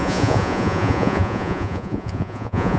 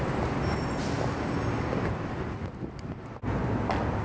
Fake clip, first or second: first